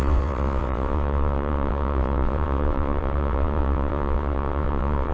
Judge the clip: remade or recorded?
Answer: remade